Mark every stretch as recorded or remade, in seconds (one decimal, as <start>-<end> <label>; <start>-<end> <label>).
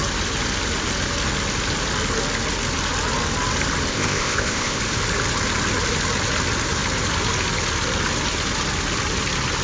0.0-3.9 recorded; 3.9-4.8 remade; 4.8-9.6 recorded